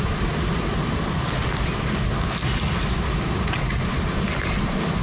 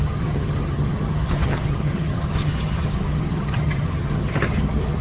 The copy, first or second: second